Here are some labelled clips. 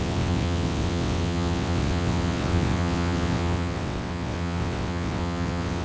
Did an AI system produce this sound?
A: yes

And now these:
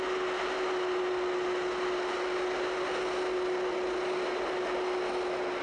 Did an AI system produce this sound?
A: no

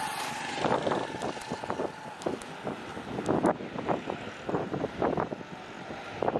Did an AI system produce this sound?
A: no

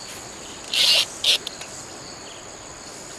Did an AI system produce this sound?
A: no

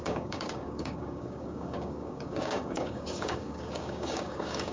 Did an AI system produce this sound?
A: yes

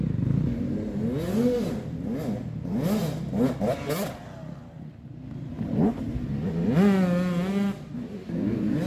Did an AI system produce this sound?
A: no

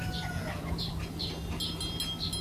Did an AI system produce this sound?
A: no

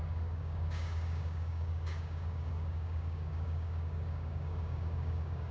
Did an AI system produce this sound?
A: yes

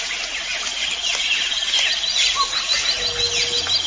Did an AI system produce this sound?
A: no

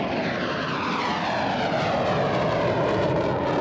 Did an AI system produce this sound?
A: yes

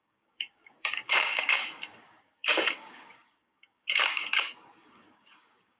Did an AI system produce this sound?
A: yes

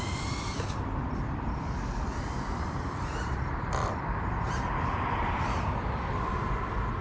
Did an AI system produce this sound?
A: yes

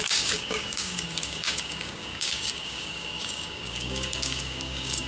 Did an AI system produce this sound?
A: yes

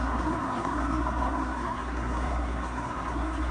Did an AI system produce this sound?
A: yes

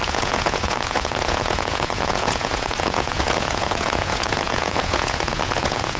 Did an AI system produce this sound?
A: yes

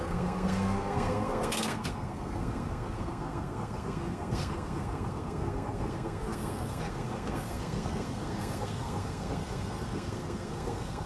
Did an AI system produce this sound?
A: yes